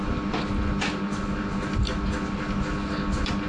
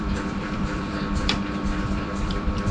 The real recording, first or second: first